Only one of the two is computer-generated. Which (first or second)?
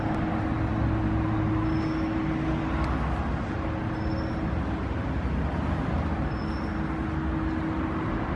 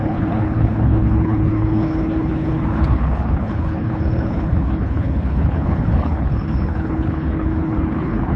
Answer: second